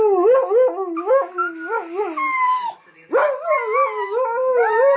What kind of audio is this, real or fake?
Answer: real